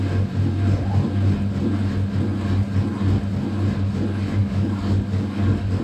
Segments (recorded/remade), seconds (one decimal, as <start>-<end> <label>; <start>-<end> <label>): 0.0-4.4 recorded; 4.4-5.8 remade